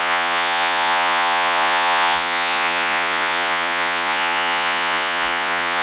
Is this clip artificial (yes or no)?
yes